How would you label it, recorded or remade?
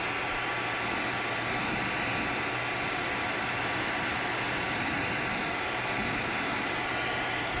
recorded